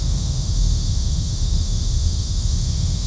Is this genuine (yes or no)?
no